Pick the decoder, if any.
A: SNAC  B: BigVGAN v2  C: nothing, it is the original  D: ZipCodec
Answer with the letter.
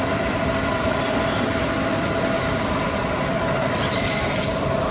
B